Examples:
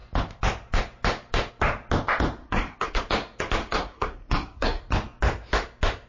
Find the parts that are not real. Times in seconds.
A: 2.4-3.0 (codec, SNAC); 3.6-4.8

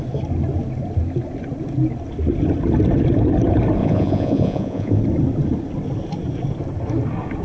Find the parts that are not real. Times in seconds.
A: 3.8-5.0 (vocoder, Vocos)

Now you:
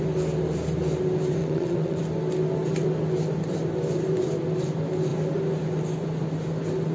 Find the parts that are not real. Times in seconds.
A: 1.4-2.0 (vocoder, WaveNeXt)